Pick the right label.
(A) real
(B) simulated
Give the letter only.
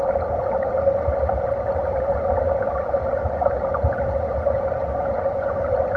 A